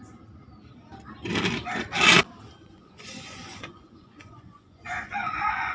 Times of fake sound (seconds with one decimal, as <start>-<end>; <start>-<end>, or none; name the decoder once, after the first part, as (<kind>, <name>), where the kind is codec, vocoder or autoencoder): 2.6-5.7 (vocoder, Vocos)